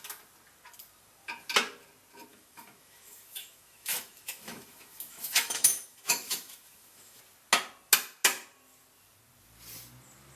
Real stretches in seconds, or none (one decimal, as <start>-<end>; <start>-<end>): 0.0-2.3; 7.2-10.4